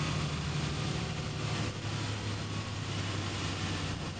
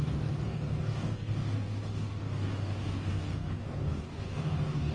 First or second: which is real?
first